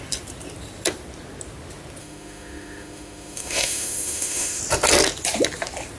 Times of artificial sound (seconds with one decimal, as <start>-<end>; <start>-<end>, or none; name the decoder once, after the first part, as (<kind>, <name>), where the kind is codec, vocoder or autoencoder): 2.0-4.6 (autoencoder, DAC-VAE)